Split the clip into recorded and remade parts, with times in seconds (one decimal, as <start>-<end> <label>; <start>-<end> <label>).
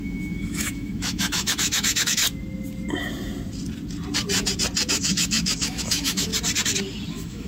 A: 0.0-2.2 remade; 2.2-4.9 recorded; 4.9-6.3 remade; 6.3-7.1 recorded; 7.1-7.5 remade